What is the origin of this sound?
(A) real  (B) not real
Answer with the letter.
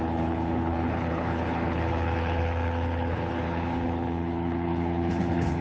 B